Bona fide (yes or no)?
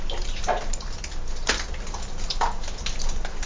yes